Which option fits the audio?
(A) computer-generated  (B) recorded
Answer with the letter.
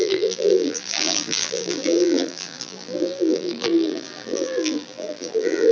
A